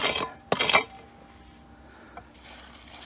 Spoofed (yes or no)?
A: no